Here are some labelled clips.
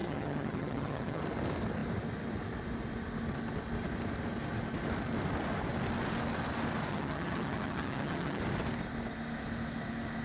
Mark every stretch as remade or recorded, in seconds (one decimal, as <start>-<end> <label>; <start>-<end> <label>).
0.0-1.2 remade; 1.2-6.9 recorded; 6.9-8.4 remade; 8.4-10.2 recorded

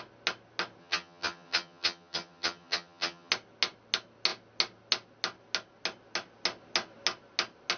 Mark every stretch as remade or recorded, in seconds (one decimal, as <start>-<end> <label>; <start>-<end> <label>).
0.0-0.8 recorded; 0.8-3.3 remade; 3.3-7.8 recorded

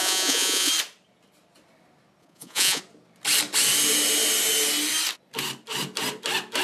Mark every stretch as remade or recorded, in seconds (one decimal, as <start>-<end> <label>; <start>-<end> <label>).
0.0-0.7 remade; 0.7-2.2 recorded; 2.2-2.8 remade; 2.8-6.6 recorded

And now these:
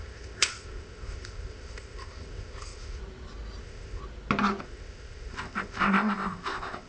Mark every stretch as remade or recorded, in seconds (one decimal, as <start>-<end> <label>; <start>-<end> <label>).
0.0-3.0 remade; 3.0-3.6 recorded; 3.6-4.0 remade; 4.0-4.6 recorded; 4.6-6.9 remade

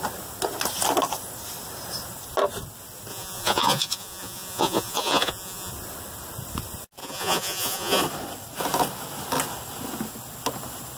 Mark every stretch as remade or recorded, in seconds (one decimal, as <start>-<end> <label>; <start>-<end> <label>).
0.0-3.1 recorded; 3.1-5.7 remade; 5.7-7.0 recorded; 7.0-8.0 remade; 8.0-11.0 recorded

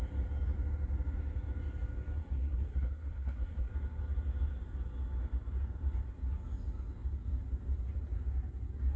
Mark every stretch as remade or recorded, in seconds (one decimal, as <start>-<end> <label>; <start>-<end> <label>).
0.0-2.2 recorded; 2.2-3.7 remade; 3.7-9.0 recorded

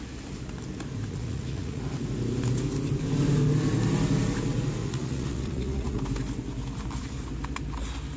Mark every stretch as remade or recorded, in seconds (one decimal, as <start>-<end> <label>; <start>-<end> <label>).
0.0-1.1 recorded; 1.1-1.8 remade; 1.8-4.8 recorded; 4.8-6.0 remade; 6.0-8.2 recorded